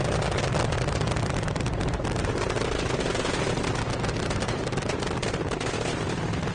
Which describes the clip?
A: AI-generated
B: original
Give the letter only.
B